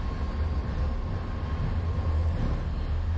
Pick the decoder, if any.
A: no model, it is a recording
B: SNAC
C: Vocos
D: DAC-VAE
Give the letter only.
A